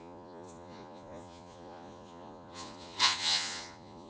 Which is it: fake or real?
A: fake